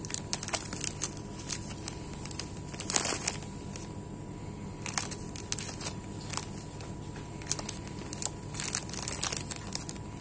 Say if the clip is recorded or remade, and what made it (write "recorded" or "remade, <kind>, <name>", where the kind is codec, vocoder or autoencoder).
recorded